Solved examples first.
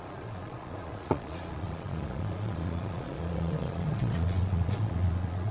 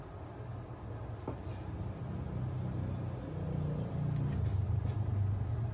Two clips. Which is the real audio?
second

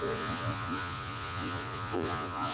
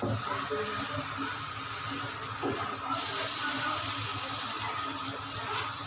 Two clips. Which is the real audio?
second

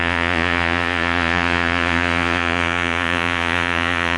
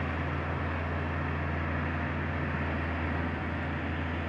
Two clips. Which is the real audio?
second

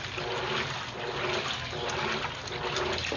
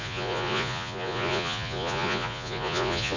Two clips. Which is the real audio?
first